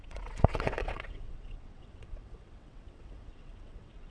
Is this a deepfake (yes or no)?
yes